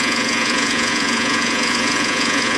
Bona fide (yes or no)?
no